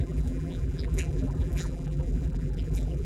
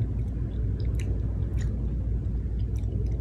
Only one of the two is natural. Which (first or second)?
second